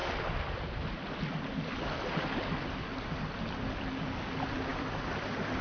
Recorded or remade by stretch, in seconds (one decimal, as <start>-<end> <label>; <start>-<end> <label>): 0.0-5.6 recorded